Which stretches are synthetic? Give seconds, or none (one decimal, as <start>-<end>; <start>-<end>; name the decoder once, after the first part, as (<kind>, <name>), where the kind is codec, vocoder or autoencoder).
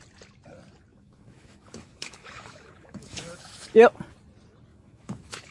0.9-3.7 (autoencoder, DAC-VAE); 4.7-5.5